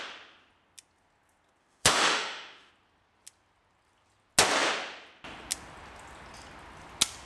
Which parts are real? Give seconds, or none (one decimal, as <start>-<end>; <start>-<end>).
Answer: 0.0-1.6; 2.7-7.3